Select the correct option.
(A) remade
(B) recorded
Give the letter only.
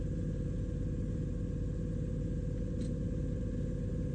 B